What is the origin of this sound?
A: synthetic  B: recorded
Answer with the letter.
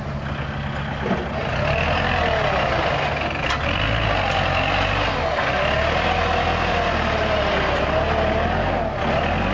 B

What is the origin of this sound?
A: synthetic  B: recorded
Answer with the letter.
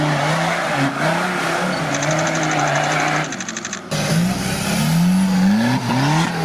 B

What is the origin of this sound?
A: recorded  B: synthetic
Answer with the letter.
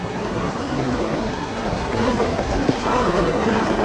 B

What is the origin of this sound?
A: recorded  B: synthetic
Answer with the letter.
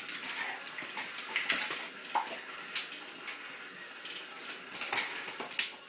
A